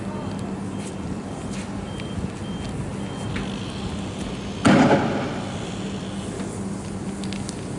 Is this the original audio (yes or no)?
yes